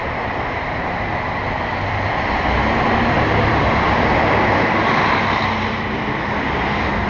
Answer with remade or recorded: remade